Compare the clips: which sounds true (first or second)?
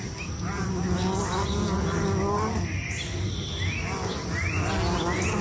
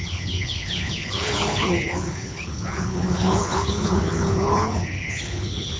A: first